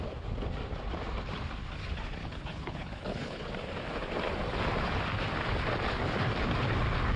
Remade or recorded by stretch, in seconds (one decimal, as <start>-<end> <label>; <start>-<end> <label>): 0.0-2.2 recorded; 2.2-3.5 remade; 3.5-7.2 recorded